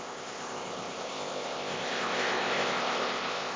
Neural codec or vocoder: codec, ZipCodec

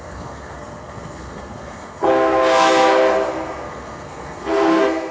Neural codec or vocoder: codec, SNAC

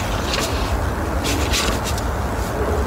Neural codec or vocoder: none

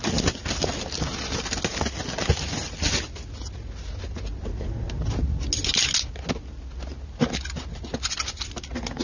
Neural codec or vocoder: none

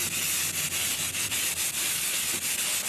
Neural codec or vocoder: none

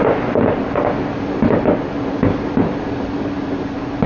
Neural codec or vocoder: none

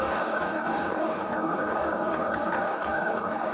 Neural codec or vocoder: codec, DAC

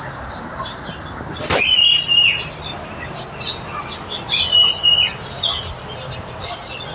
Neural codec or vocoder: none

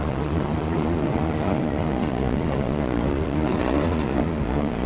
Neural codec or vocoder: vocoder, Vocos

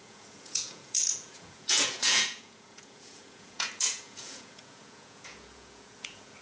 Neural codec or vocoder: vocoder, Vocos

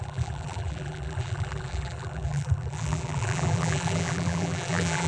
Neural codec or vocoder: vocoder, BigVGAN v2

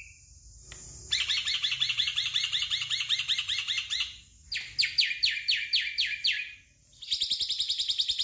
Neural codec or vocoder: none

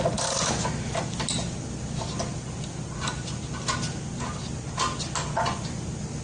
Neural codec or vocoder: none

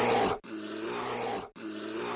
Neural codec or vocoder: none